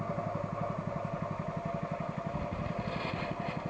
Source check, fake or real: real